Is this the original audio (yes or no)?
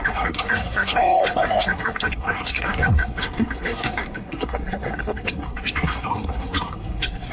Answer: no